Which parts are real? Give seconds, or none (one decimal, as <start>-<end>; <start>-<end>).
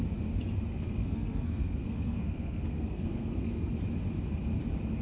0.0-0.7; 3.7-5.0